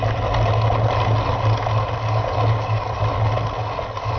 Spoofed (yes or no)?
no